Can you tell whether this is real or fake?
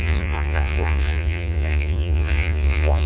fake